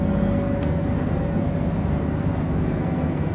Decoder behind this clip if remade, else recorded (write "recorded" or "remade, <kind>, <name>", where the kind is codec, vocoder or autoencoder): remade, codec, SNAC